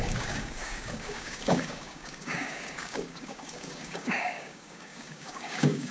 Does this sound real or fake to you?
fake